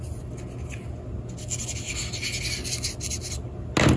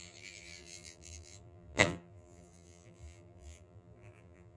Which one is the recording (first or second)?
first